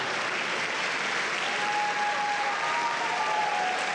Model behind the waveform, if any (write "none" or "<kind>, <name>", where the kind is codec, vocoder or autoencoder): none